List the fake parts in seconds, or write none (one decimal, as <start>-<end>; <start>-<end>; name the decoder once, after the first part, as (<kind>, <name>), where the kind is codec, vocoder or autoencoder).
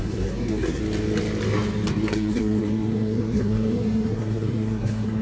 0.0-0.8 (codec, SNAC); 1.9-5.2